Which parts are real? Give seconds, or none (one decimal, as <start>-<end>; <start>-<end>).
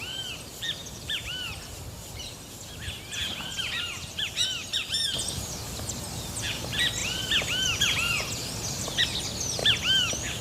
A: 0.0-0.8; 5.9-7.0; 9.0-10.4